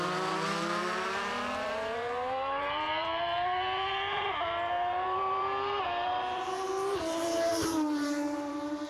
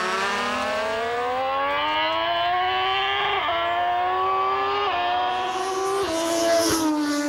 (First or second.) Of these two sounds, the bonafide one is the second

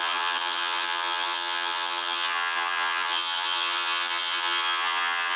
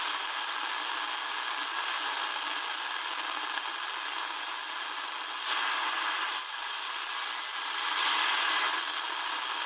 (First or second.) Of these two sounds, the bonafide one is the second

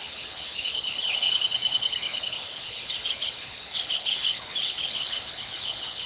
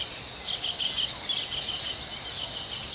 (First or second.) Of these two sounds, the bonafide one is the second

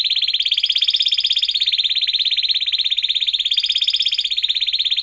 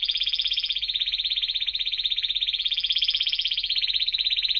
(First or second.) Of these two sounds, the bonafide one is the first